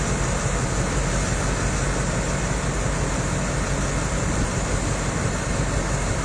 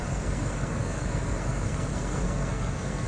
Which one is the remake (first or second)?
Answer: second